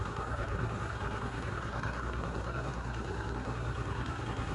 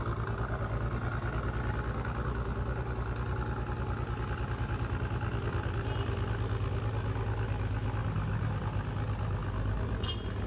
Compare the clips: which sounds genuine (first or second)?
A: second